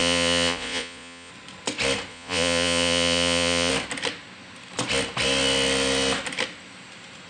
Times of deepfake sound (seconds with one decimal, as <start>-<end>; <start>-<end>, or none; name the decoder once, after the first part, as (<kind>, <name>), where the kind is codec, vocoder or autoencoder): 0.0-1.3 (vocoder, Vocos); 2.1-3.7